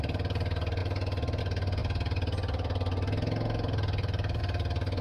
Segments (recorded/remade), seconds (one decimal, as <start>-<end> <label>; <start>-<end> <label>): 0.0-0.8 recorded; 0.8-1.4 remade; 1.4-5.0 recorded